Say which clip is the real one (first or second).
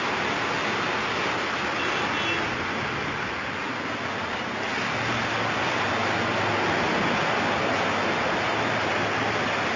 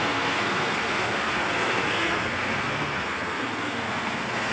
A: first